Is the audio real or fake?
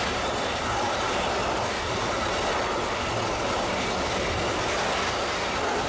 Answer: real